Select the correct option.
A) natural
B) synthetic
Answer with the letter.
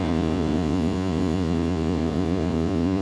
B